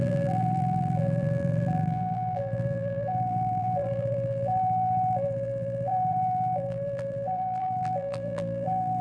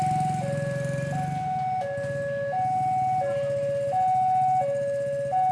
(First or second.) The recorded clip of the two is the second